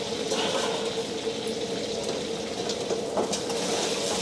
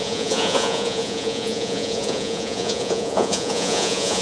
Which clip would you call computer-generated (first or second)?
second